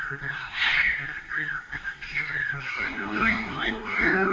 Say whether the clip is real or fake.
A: fake